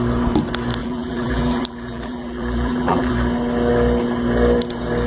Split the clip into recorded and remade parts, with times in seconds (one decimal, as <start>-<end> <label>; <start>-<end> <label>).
0.0-0.8 recorded; 0.8-3.1 remade; 3.1-5.1 recorded